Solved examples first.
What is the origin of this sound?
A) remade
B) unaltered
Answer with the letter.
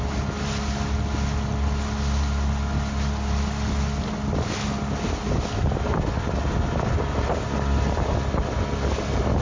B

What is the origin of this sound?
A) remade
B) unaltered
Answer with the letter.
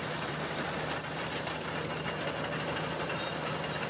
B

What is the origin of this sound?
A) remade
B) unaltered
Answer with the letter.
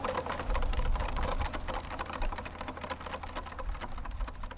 B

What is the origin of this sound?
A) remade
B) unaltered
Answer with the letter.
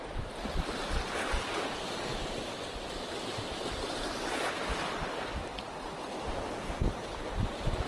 B